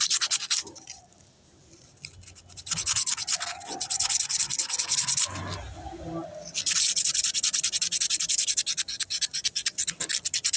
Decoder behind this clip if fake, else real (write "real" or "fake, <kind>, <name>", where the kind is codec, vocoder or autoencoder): real